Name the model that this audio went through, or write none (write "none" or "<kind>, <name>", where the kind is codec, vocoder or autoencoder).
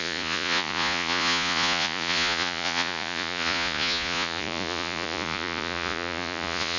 vocoder, Vocos